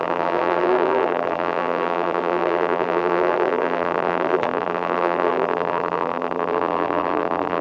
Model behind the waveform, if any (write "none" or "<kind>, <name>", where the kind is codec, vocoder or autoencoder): vocoder, BigVGAN v2